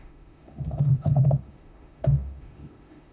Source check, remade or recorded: remade